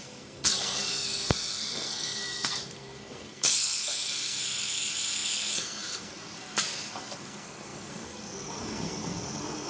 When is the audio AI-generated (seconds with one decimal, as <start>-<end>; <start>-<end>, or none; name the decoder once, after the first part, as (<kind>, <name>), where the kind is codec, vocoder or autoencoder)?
0.0-9.7 (codec, SNAC)